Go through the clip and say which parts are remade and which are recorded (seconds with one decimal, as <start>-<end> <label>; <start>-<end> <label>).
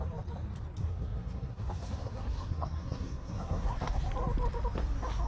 0.0-0.8 recorded; 0.8-4.0 remade; 4.0-5.3 recorded